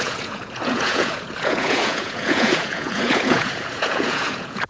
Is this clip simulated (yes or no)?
yes